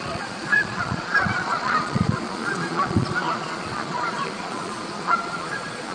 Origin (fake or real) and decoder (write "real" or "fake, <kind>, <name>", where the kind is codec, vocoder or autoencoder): fake, vocoder, Vocos